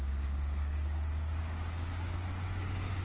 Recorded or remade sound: remade